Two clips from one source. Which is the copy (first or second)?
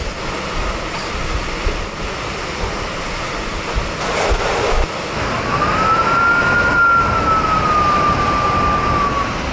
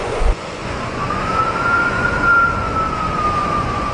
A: second